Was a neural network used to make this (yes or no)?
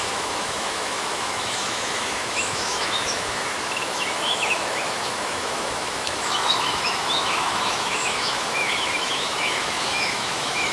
yes